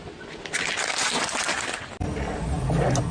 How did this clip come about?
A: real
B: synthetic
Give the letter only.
A